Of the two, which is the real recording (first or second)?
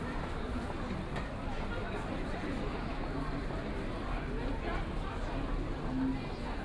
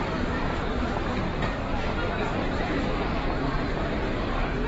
first